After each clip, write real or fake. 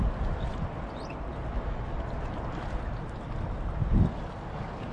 real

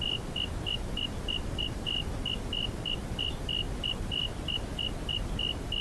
fake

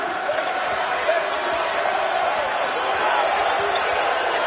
fake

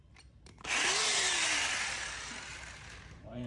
fake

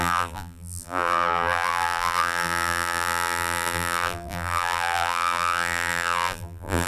fake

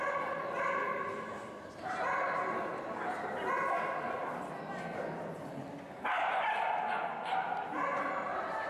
real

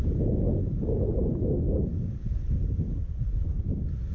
real